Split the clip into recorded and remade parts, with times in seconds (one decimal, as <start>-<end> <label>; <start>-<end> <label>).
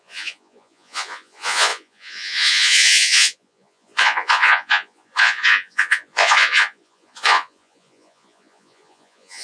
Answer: 0.0-9.4 remade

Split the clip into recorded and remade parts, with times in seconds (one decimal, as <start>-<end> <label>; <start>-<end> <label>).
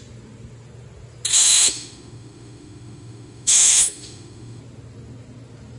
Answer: 0.0-1.3 recorded; 1.3-4.6 remade; 4.6-5.8 recorded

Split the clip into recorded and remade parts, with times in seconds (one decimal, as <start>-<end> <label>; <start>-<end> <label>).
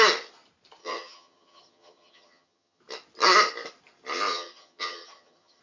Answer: 0.0-0.8 recorded; 0.8-2.8 remade; 2.8-4.3 recorded; 4.3-5.6 remade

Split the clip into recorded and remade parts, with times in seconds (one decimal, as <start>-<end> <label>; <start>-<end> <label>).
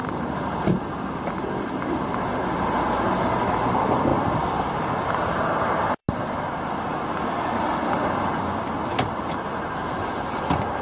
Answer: 0.0-0.8 remade; 0.8-10.8 recorded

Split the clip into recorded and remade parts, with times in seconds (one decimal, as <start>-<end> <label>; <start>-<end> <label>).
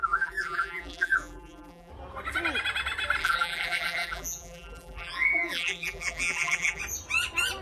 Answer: 0.0-1.9 remade; 1.9-3.2 recorded; 3.2-6.8 remade; 6.8-7.6 recorded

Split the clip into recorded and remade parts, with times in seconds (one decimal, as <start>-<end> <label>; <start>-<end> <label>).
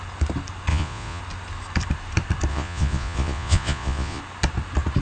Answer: 0.0-0.7 recorded; 0.7-1.2 remade; 1.2-2.5 recorded; 2.5-4.2 remade; 4.2-5.0 recorded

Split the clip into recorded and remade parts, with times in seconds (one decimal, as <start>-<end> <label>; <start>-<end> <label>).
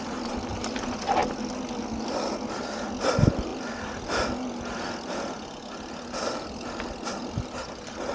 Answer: 0.0-8.1 recorded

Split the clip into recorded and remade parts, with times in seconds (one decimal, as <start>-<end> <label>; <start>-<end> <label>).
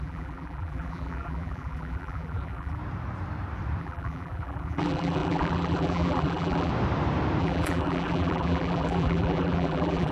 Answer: 0.0-2.8 remade; 2.8-3.8 recorded; 3.8-6.7 remade; 6.7-7.4 recorded; 7.4-10.1 remade